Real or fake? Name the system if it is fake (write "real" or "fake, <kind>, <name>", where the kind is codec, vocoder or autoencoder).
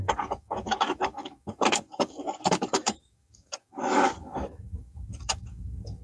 fake, codec, DAC